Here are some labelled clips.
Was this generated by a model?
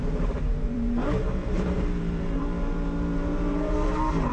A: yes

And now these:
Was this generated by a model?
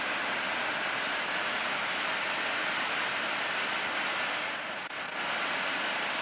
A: no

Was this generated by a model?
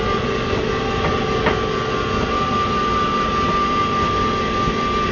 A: no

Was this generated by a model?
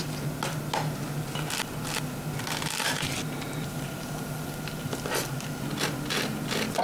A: no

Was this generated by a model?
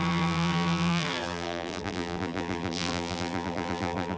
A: yes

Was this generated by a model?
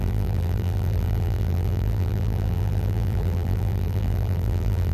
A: yes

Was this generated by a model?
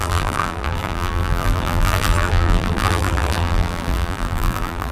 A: yes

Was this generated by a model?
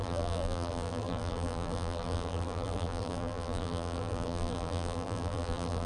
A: yes